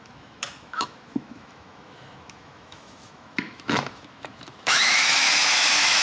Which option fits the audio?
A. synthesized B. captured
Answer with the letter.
A